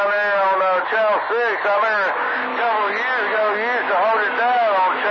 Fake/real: real